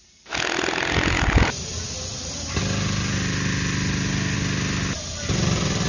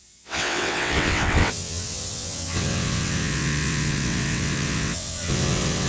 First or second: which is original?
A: first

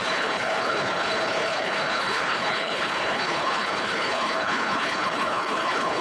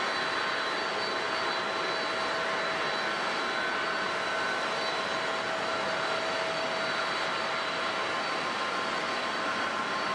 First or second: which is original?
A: second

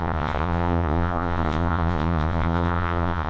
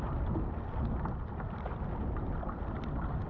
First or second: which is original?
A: second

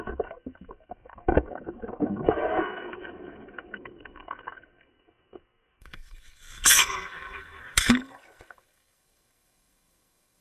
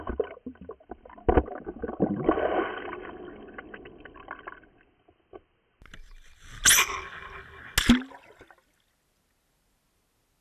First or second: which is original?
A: second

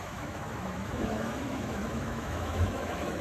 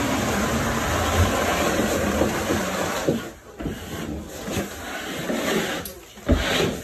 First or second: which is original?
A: second